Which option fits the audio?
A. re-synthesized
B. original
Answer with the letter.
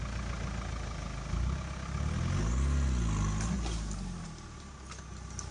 B